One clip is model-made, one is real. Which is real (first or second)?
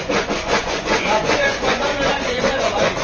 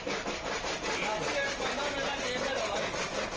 second